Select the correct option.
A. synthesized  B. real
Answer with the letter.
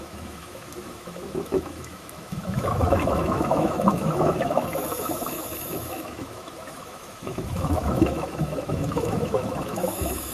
A